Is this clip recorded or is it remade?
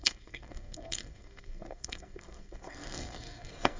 remade